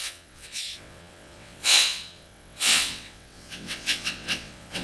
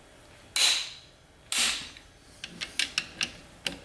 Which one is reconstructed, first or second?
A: first